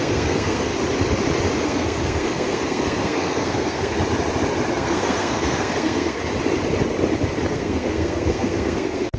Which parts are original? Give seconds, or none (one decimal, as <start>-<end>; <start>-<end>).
0.7-1.6; 4.0-4.7; 6.2-7.5